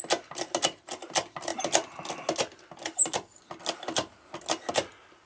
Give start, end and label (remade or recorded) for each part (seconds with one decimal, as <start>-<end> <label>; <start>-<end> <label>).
0.0-5.3 recorded